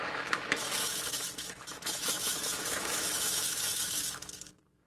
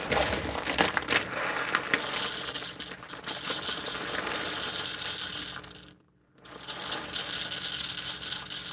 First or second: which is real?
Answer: second